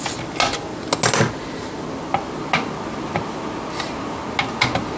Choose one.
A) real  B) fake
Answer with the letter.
A